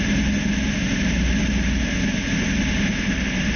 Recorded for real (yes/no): yes